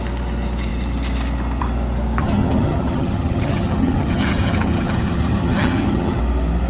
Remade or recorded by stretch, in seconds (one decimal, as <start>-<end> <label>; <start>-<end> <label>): 0.0-2.2 recorded; 2.2-6.2 remade; 6.2-6.7 recorded